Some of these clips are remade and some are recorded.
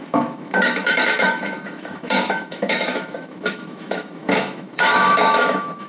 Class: remade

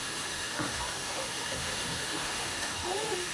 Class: remade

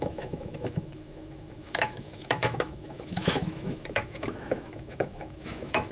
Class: remade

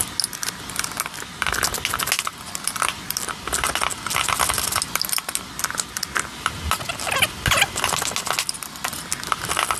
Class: recorded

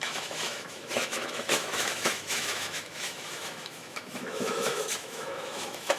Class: remade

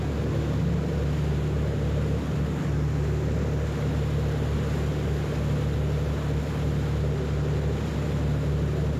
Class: recorded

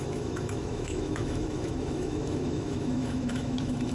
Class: remade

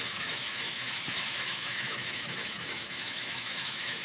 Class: remade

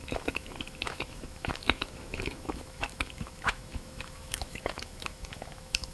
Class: remade